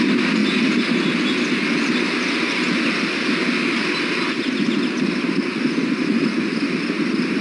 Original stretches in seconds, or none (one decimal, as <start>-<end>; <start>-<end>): 0.0-7.4